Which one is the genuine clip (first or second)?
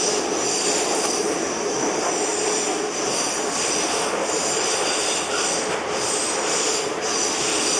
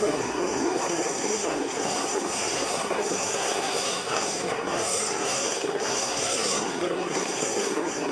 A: first